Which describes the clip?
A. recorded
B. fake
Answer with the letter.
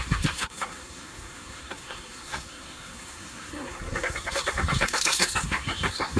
B